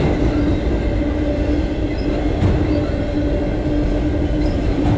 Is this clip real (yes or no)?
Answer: yes